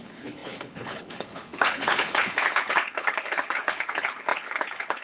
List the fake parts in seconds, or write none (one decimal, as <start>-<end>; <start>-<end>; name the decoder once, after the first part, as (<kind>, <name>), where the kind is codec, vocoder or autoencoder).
0.0-5.0 (codec, HILCodec)